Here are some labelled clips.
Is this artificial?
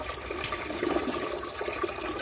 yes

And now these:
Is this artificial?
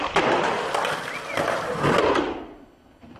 no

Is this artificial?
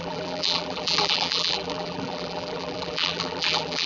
yes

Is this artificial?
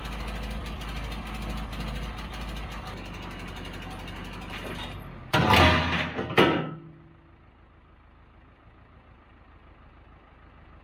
no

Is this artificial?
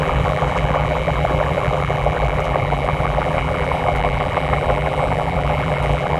yes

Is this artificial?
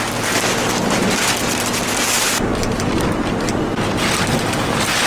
no